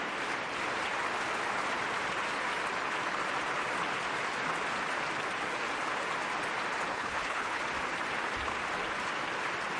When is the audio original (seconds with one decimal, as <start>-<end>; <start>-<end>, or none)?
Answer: 0.0-6.9; 7.6-9.8